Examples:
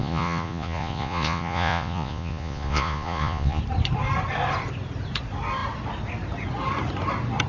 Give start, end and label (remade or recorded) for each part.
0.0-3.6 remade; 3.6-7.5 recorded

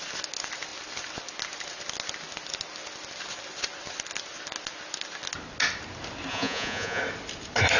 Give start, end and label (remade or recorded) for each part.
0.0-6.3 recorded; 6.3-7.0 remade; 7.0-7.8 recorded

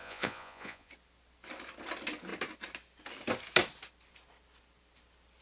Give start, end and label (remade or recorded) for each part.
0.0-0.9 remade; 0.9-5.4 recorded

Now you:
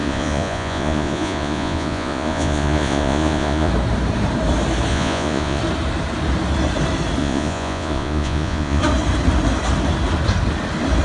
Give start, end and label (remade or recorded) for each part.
0.0-3.7 remade; 3.7-4.9 recorded; 4.9-5.6 remade; 5.6-7.2 recorded; 7.2-8.8 remade; 8.8-11.0 recorded

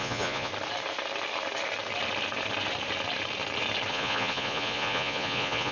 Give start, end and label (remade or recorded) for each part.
0.0-0.5 remade; 0.5-3.9 recorded; 3.9-5.7 remade

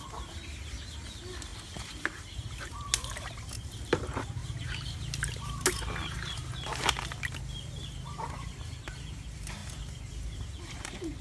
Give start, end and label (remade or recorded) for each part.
0.0-11.2 recorded